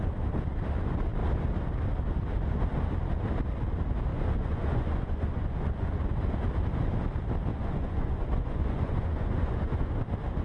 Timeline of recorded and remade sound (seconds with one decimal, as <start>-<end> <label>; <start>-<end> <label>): 0.0-4.1 recorded; 4.1-6.0 remade; 6.0-7.5 recorded; 7.5-9.9 remade; 9.9-10.4 recorded